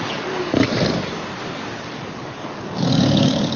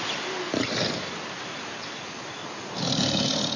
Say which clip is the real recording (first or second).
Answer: second